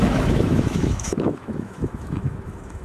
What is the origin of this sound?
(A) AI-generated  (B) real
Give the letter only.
A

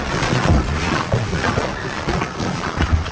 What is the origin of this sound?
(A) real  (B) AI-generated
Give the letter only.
B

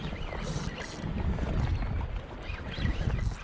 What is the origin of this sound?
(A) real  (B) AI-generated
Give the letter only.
A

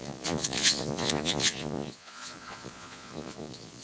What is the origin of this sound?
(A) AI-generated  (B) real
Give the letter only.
A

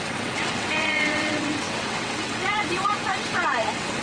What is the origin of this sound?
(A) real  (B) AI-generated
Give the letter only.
B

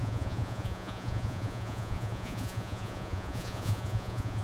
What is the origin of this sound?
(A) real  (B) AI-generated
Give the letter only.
B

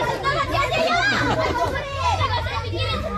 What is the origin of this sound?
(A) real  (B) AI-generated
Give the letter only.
B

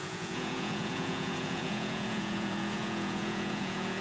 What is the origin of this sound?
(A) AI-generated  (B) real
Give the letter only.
A